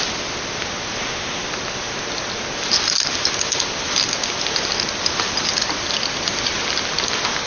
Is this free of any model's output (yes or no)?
yes